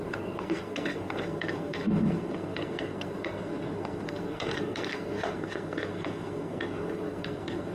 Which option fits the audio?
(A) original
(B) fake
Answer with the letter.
B